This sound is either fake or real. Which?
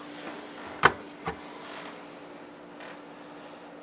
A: real